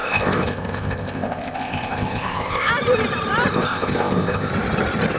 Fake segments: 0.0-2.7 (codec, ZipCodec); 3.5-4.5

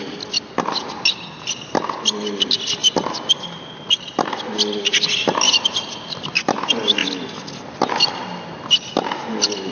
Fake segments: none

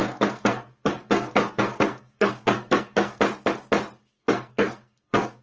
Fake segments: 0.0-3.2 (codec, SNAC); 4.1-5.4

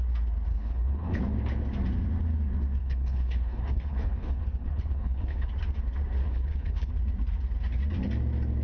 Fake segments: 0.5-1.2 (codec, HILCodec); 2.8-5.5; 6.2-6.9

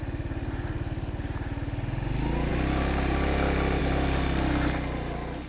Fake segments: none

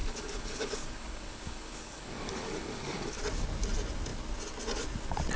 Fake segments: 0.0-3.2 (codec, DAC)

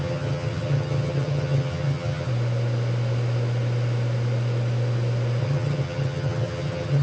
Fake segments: 0.0-2.3 (vocoder, HiFi-GAN); 5.4-7.0